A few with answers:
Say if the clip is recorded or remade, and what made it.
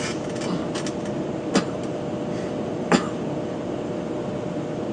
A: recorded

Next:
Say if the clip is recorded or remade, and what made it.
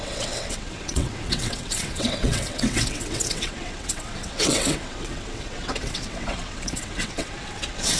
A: remade, vocoder, WaveNeXt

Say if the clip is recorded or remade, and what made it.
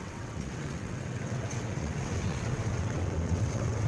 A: remade, vocoder, WaveNeXt